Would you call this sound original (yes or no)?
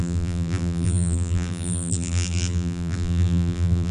no